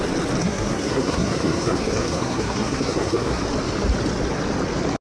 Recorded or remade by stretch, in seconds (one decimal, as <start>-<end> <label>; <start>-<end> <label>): 0.0-0.4 recorded; 0.4-3.4 remade; 3.4-5.0 recorded